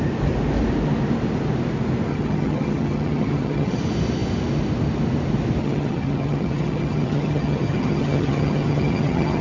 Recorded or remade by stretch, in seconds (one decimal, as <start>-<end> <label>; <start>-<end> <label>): 0.0-2.1 recorded; 2.1-3.8 remade; 3.8-5.6 recorded; 5.6-9.4 remade